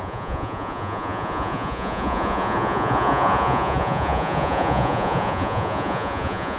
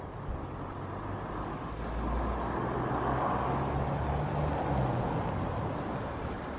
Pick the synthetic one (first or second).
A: first